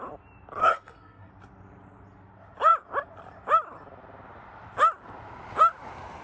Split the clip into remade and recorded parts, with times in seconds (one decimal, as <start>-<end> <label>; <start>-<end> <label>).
0.0-0.6 recorded; 0.6-1.3 remade; 1.3-6.2 recorded